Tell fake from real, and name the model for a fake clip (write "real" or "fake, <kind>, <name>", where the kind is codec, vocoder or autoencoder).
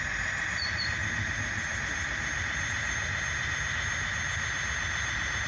real